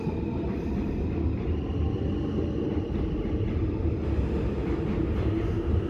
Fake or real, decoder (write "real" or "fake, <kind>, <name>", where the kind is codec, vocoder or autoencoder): real